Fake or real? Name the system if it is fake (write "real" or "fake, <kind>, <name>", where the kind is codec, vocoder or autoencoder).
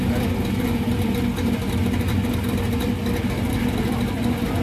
real